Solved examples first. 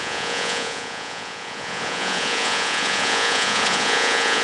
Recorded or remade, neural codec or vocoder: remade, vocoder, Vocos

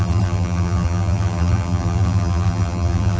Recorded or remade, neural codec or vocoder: remade, vocoder, BigVGAN v2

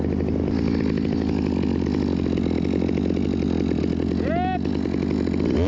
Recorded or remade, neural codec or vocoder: recorded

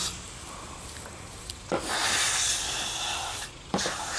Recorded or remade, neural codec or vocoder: recorded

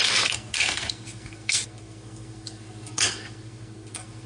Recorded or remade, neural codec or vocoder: remade, codec, SNAC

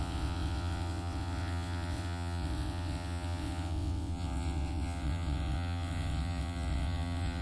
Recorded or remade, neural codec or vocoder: remade, vocoder, WaveNeXt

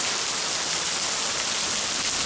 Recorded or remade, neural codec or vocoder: recorded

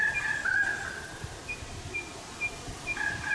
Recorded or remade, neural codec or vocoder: recorded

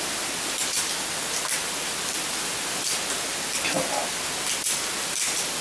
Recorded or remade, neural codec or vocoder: recorded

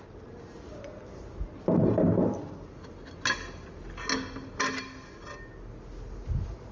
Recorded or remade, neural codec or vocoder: recorded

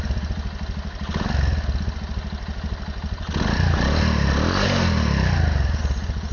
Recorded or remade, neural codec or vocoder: recorded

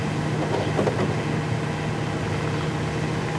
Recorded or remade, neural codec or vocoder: recorded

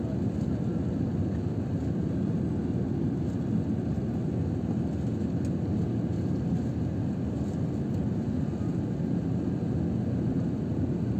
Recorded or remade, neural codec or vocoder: recorded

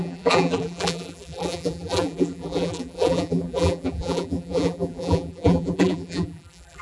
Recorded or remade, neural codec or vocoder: remade, vocoder, BigVGAN v2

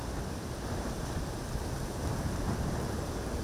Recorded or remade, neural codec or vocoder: recorded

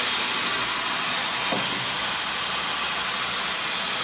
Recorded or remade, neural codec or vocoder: recorded